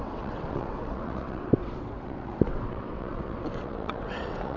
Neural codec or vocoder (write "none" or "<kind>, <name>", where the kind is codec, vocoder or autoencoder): vocoder, WaveNeXt